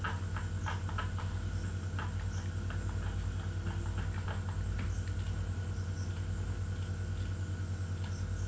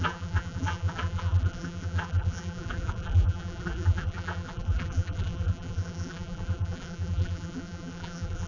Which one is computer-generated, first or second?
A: second